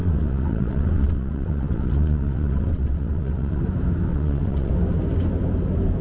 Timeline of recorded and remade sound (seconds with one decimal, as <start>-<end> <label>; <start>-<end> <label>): 0.0-3.6 remade; 3.6-4.1 recorded; 4.1-4.7 remade; 4.7-6.0 recorded